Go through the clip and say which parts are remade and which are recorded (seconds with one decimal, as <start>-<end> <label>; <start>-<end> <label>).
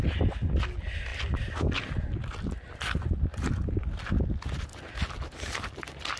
0.0-6.2 recorded